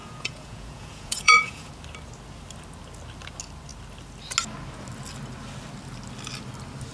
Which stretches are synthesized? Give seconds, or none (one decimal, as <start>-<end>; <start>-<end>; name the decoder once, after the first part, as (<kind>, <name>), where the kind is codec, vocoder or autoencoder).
0.0-1.7 (vocoder, Vocos)